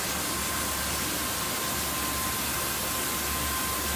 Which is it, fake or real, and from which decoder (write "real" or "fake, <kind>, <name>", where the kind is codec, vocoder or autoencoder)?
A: real